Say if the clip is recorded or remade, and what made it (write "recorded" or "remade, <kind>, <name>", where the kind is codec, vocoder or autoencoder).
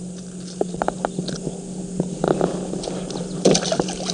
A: recorded